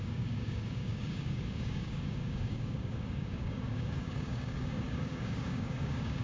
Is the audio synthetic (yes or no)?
yes